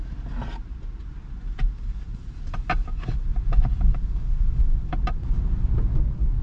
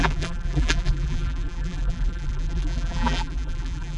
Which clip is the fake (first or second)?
second